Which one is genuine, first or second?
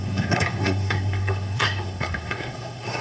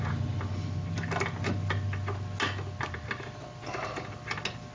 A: second